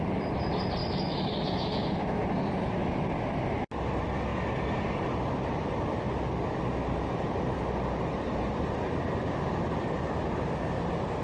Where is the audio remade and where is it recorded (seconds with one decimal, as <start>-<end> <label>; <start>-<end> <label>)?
0.0-0.8 recorded; 0.8-2.2 remade; 2.2-11.2 recorded